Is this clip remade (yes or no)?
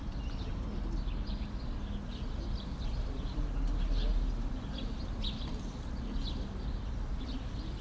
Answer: no